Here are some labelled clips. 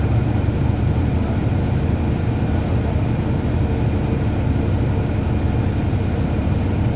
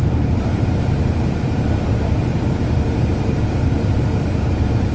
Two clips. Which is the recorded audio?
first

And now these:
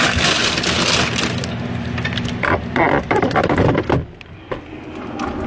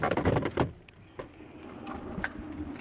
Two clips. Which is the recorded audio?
first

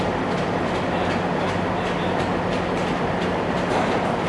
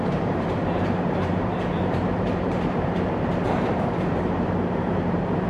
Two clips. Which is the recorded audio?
first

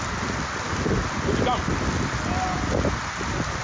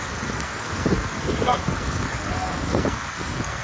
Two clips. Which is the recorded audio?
first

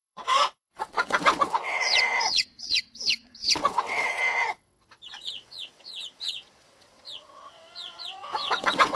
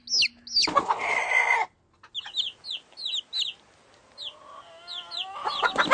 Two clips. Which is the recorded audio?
second